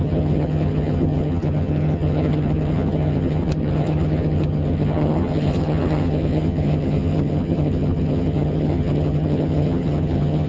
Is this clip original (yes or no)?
no